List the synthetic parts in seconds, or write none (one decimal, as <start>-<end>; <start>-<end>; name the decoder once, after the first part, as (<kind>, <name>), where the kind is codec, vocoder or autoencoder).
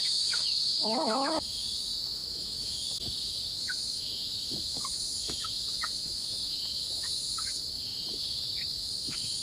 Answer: 0.0-9.4 (autoencoder, DAC-VAE)